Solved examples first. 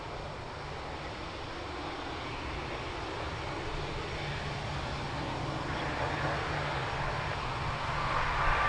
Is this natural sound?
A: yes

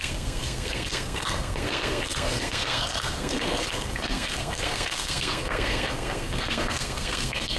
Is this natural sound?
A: no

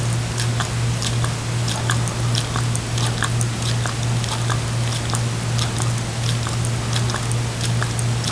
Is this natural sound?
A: yes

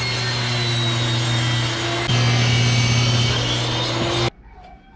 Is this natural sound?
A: yes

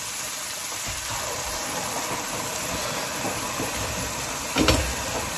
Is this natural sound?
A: yes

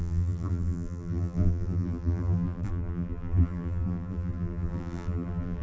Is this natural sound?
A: no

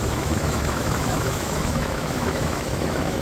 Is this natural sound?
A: no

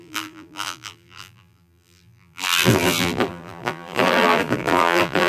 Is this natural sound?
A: no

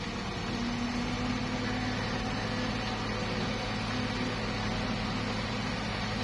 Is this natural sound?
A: yes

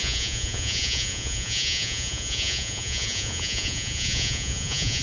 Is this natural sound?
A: no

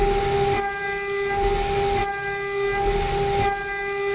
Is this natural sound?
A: yes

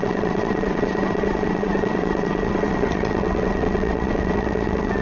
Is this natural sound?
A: no